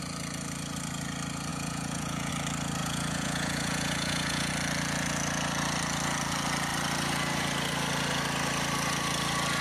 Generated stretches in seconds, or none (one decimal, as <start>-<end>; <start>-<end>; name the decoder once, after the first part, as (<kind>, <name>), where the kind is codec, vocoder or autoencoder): 1.5-2.3 (vocoder, Vocos); 2.8-4.5